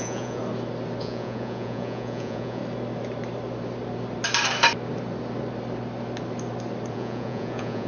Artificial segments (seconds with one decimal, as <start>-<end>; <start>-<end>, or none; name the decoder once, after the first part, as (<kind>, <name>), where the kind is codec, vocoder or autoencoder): 0.0-0.4 (vocoder, Vocos); 1.0-2.6; 6.9-7.9